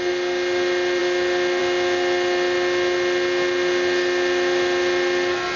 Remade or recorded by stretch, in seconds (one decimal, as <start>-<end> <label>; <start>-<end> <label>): 0.0-5.6 recorded